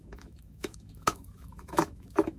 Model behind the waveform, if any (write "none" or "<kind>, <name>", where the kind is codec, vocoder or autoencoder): autoencoder, DAC-VAE